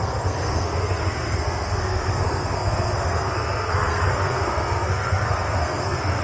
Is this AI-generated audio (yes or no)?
yes